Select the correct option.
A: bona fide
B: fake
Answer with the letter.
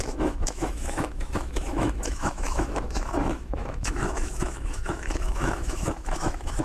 B